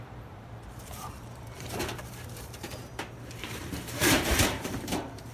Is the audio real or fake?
fake